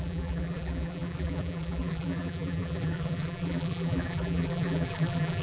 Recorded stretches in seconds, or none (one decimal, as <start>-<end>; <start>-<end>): none